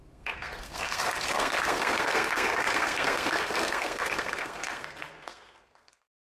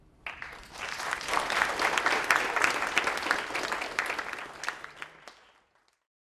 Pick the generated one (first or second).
first